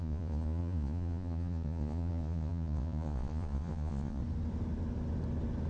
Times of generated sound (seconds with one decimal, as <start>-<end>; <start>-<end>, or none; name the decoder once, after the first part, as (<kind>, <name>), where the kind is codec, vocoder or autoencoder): 0.0-4.2 (vocoder, Vocos)